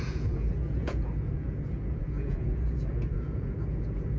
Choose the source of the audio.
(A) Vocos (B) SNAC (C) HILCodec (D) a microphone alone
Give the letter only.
A